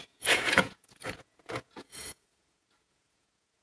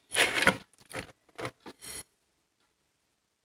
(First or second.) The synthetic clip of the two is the first